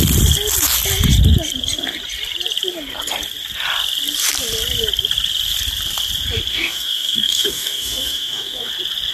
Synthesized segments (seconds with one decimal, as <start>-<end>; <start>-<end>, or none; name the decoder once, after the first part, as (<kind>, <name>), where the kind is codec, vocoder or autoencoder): 6.5-8.7 (codec, DAC)